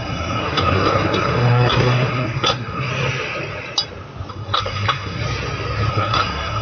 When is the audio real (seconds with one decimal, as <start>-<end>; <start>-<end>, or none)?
2.9-4.3; 5.2-5.9